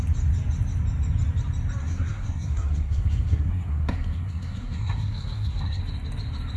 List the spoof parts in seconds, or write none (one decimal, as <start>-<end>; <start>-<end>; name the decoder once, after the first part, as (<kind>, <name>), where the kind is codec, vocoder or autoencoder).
1.8-5.8 (codec, SNAC)